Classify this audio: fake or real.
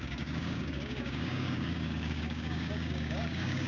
fake